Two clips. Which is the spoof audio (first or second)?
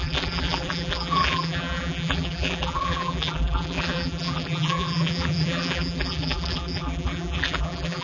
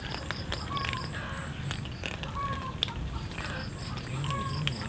first